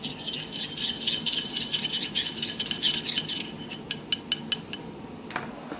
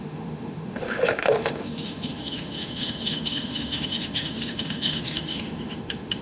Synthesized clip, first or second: second